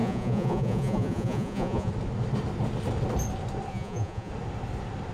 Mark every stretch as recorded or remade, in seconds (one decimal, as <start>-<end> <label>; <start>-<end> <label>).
0.0-1.9 remade; 1.9-3.7 recorded; 3.7-4.3 remade; 4.3-5.1 recorded